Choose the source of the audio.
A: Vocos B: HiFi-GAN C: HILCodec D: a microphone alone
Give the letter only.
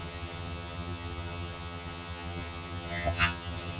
B